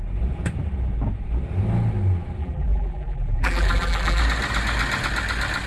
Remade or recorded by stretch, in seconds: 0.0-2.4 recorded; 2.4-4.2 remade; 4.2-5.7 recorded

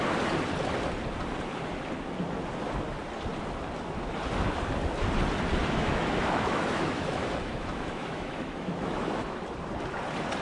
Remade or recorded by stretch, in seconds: 0.0-5.6 recorded; 5.6-9.4 remade; 9.4-10.4 recorded

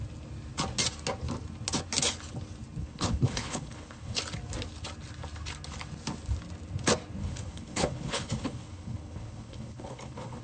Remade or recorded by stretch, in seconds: 0.0-2.8 recorded; 2.8-4.2 remade; 4.2-7.2 recorded; 7.2-10.4 remade